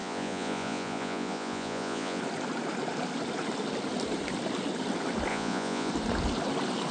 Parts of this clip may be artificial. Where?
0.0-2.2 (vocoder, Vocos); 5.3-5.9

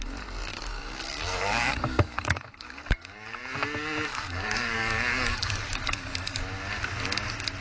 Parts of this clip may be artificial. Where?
0.5-3.4 (codec, DAC); 4.1-6.4

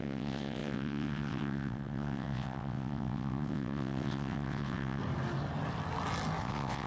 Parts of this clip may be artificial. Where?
0.0-5.0 (vocoder, WaveNeXt); 6.4-6.9